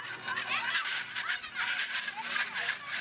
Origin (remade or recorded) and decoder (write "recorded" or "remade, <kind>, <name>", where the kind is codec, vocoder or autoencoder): recorded